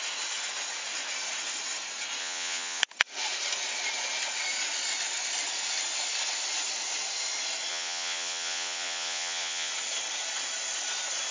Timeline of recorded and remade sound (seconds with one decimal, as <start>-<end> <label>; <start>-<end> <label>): 0.0-2.2 recorded; 2.2-2.8 remade; 2.8-7.7 recorded; 7.7-9.7 remade; 9.7-11.3 recorded